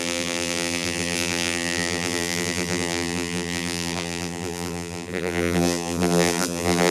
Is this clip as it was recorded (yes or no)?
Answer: no